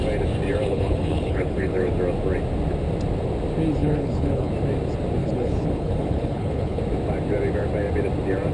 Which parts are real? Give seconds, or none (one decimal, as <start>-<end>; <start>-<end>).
0.0-0.6; 1.9-3.8; 4.5-5.2; 6.8-8.5